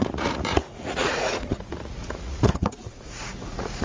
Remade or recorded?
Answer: remade